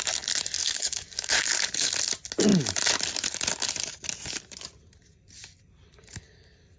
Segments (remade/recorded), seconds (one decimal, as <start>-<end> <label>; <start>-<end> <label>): 0.0-0.6 recorded; 0.6-1.9 remade; 1.9-6.8 recorded